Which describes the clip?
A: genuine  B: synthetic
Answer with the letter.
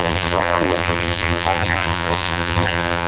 B